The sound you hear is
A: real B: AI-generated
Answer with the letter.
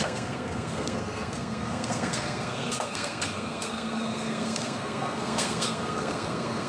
B